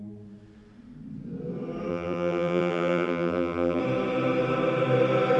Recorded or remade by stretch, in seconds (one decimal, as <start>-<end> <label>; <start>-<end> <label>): 0.0-1.9 recorded; 1.9-3.8 remade; 3.8-5.4 recorded